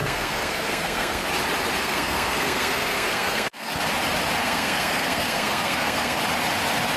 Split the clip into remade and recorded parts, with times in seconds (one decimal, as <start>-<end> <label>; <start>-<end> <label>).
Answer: 0.0-1.3 remade; 1.3-1.8 recorded; 1.8-3.8 remade; 3.8-4.4 recorded; 4.4-6.2 remade; 6.2-7.0 recorded